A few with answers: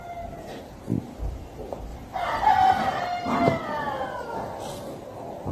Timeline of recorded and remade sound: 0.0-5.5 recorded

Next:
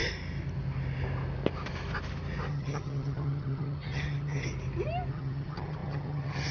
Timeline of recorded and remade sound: 0.0-2.5 recorded; 2.5-4.4 remade; 4.4-5.1 recorded; 5.1-6.5 remade

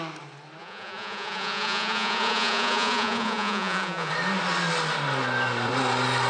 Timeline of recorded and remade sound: 0.0-0.6 recorded; 0.6-4.1 remade; 4.1-6.3 recorded

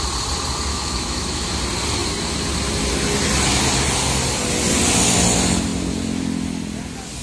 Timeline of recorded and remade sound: 0.0-0.7 recorded; 0.7-1.5 remade; 1.5-7.2 recorded

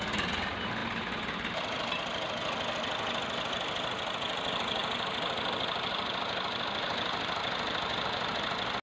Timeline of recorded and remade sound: 0.0-8.8 recorded

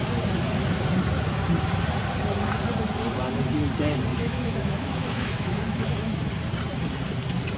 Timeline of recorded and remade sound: 0.0-4.1 recorded; 4.1-6.3 remade; 6.3-7.6 recorded

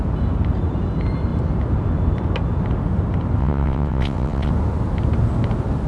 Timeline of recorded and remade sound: 0.0-3.4 recorded; 3.4-4.5 remade; 4.5-5.9 recorded